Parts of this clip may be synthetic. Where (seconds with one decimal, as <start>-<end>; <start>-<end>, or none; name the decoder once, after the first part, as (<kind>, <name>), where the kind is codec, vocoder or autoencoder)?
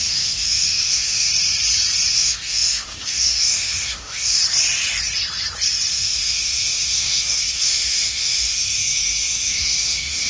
0.0-1.3 (autoencoder, DAC-VAE); 2.1-4.4; 5.9-10.3